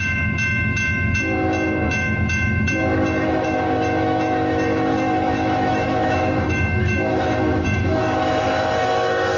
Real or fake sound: fake